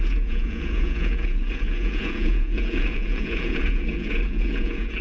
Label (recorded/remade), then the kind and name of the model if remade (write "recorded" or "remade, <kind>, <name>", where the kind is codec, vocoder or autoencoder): remade, vocoder, Vocos